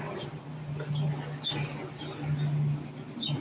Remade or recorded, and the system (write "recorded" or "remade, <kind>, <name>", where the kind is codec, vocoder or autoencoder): recorded